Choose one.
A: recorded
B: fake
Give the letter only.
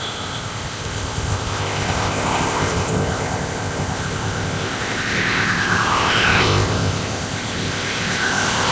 B